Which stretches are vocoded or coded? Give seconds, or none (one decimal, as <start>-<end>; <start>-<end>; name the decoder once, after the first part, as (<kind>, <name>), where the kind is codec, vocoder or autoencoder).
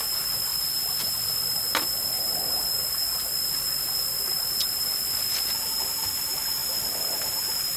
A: 0.5-2.7 (vocoder, BigVGAN v2)